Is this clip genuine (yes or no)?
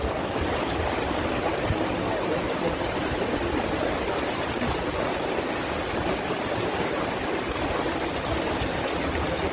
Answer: yes